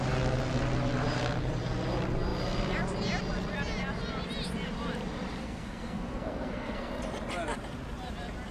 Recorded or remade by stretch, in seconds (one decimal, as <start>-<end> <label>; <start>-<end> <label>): 0.0-5.4 recorded; 5.4-6.9 remade; 6.9-8.5 recorded